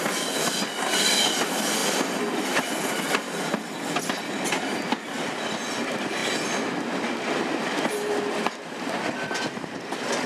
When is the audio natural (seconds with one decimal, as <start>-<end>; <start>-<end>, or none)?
0.0-10.3